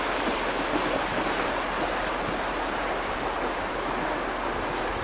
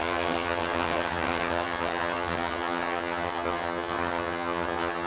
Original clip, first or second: first